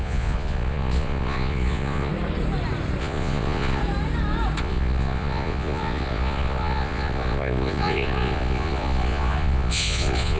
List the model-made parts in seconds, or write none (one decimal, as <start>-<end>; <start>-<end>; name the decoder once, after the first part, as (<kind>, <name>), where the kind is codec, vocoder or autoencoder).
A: 0.0-2.1 (vocoder, Vocos); 3.0-3.8; 4.6-10.4